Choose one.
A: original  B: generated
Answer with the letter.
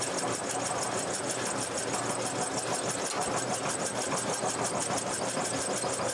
A